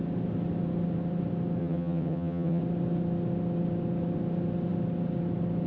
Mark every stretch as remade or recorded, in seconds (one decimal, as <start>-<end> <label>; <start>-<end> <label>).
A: 0.0-1.6 recorded; 1.6-2.6 remade; 2.6-5.7 recorded